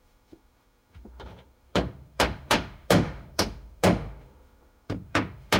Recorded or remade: remade